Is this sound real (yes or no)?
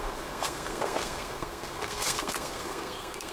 no